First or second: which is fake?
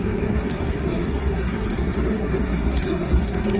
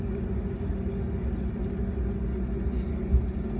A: first